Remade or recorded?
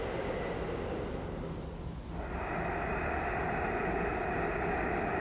recorded